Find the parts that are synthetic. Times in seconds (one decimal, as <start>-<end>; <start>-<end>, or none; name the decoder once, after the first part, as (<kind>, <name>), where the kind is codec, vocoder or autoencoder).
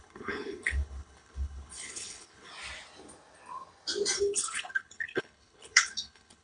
0.0-2.5 (codec, HILCodec); 4.2-6.4